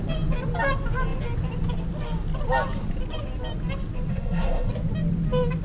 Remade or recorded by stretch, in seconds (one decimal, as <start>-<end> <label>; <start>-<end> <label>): 0.0-4.1 recorded; 4.1-4.7 remade; 4.7-5.6 recorded

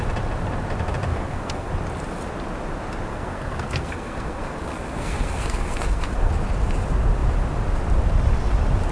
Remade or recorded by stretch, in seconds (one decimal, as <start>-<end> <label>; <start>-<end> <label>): 0.0-1.1 recorded; 1.1-1.7 remade; 1.7-3.1 recorded; 3.1-6.3 remade; 6.3-8.9 recorded